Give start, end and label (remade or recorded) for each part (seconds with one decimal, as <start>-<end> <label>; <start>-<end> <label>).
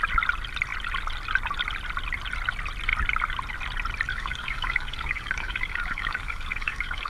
0.0-4.1 recorded; 4.1-7.1 remade